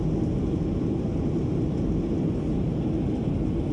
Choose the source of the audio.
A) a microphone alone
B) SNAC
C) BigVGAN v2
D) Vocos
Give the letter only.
A